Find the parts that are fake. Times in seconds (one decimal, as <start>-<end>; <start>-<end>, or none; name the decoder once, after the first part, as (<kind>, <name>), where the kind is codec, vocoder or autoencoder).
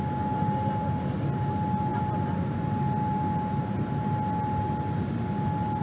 none